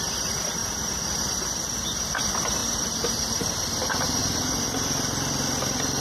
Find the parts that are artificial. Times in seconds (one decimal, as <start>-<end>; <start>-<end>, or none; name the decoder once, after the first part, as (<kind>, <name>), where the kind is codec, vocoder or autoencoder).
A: none